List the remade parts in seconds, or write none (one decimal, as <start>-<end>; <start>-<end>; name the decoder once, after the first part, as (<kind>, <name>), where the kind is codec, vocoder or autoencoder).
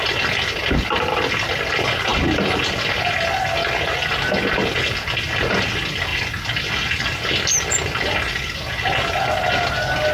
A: none